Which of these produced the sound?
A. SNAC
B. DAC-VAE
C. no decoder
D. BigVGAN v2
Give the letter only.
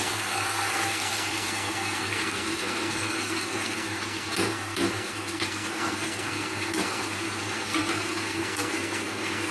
A